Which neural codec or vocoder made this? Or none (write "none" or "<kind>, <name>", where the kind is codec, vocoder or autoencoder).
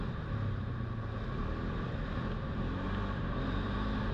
none